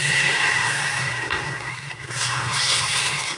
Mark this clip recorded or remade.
remade